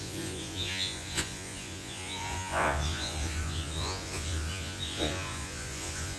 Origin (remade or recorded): remade